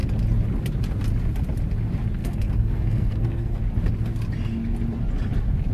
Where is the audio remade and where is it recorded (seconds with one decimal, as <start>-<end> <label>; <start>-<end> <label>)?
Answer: 0.0-2.2 recorded; 2.2-3.6 remade; 3.6-5.7 recorded